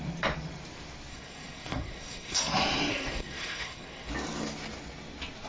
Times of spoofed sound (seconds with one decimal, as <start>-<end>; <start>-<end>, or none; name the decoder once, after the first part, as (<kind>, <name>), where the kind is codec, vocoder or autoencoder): 1.1-2.4 (codec, SNAC); 2.9-4.1